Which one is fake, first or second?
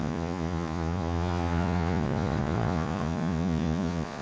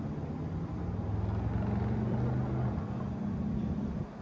first